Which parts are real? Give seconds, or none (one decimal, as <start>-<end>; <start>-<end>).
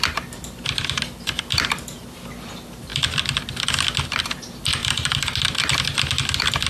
0.0-6.7